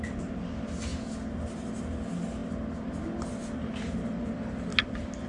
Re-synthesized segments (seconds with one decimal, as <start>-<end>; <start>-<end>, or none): none